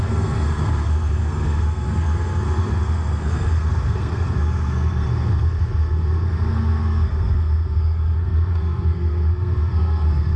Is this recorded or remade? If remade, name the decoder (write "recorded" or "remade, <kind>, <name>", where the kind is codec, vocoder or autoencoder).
remade, codec, SNAC